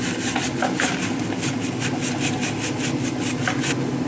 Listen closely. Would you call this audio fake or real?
real